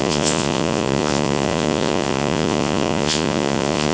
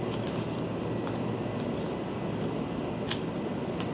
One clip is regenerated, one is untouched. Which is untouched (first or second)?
second